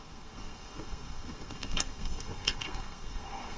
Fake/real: fake